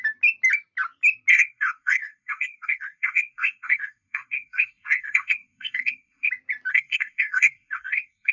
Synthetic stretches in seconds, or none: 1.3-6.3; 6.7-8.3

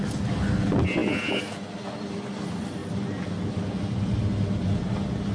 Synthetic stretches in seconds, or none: none

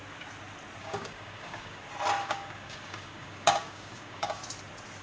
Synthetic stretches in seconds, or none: 0.8-1.8; 2.2-4.4